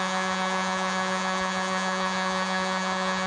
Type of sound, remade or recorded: remade